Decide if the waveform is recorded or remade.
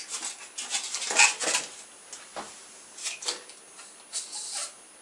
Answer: recorded